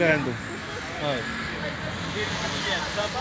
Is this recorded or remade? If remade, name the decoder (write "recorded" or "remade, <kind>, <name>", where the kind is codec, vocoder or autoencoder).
recorded